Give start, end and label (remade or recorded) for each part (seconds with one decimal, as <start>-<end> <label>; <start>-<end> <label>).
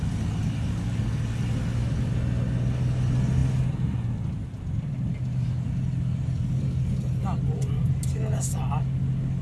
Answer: 0.0-9.4 recorded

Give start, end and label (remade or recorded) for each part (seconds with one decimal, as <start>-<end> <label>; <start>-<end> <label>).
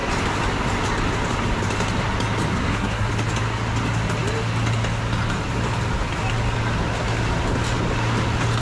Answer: 0.0-2.6 recorded; 2.6-3.1 remade; 3.1-8.6 recorded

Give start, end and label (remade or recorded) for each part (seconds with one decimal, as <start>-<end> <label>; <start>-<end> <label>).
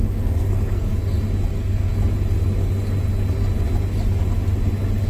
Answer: 0.0-0.9 remade; 0.9-1.5 recorded; 1.5-1.9 remade; 1.9-5.1 recorded